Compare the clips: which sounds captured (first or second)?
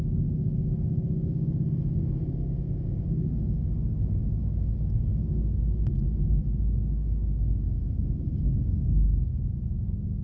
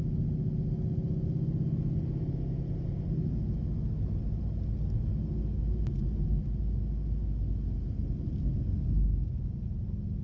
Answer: second